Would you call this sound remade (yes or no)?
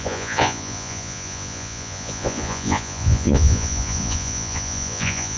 yes